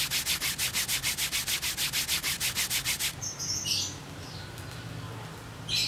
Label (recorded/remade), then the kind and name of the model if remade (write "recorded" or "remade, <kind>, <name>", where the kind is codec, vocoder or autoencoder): recorded